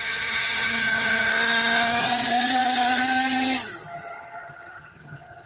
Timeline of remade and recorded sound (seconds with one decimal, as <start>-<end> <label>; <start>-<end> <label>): 0.0-1.3 remade; 1.3-2.0 recorded; 2.0-5.5 remade

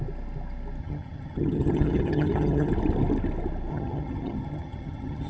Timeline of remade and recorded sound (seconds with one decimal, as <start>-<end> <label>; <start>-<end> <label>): 0.0-0.8 recorded; 0.8-2.7 remade; 2.7-3.7 recorded; 3.7-5.3 remade

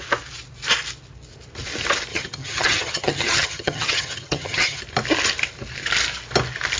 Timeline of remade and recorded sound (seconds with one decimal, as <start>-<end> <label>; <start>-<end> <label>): 0.0-2.1 recorded; 2.1-4.8 remade; 4.8-6.8 recorded

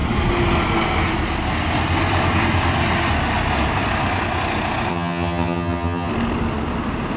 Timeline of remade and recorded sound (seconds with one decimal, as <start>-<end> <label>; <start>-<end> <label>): 0.0-4.9 recorded; 4.9-6.1 remade; 6.1-7.2 recorded

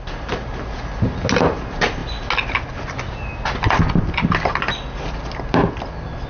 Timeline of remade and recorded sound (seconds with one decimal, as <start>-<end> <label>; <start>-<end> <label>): 0.0-6.3 recorded

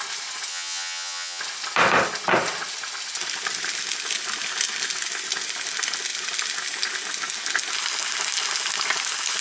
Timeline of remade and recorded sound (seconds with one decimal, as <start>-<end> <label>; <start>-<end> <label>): 0.0-0.5 recorded; 0.5-1.4 remade; 1.4-9.4 recorded

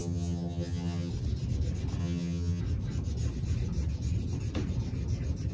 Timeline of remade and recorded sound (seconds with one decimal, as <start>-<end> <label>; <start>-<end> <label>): 0.0-1.1 remade; 1.1-2.0 recorded; 2.0-2.6 remade; 2.6-5.5 recorded

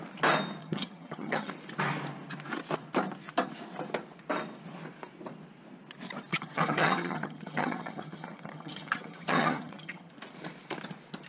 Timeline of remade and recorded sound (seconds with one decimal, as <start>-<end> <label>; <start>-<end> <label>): 0.0-0.6 recorded; 0.6-1.5 remade; 1.5-6.3 recorded; 6.3-10.1 remade; 10.1-11.3 recorded